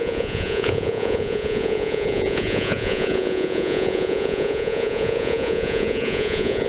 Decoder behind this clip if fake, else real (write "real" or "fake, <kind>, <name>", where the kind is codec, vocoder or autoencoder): fake, vocoder, Vocos